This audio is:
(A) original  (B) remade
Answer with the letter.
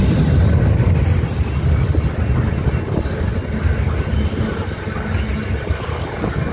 A